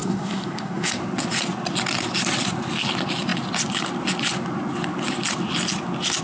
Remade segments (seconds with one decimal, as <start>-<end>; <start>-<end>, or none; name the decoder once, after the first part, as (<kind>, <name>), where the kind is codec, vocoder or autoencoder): 0.0-0.9 (codec, SNAC)